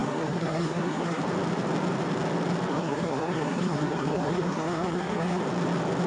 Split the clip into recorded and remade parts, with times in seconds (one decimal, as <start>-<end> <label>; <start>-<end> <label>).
0.0-1.2 remade; 1.2-2.7 recorded; 2.7-5.4 remade; 5.4-6.1 recorded